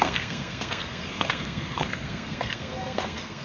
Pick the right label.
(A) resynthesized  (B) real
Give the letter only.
A